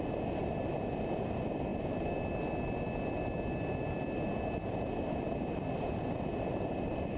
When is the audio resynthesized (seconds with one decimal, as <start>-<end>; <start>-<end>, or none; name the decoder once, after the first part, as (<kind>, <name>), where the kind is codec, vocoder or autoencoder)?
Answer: none